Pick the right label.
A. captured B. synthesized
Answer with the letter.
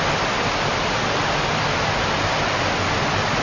A